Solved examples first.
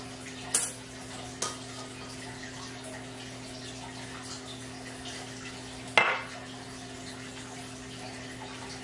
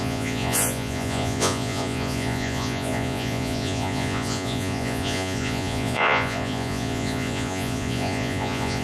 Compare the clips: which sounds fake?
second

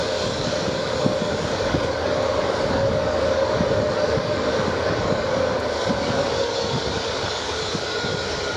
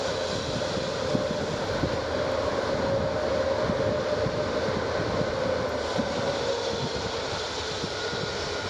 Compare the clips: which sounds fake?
first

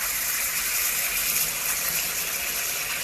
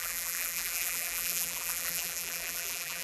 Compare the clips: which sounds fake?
second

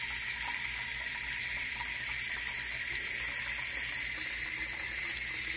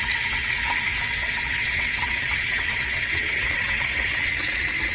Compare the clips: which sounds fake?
second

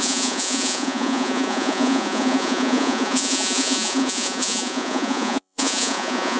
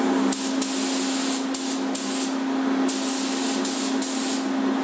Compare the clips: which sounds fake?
first